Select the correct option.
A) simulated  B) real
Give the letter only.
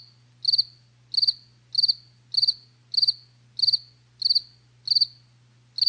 B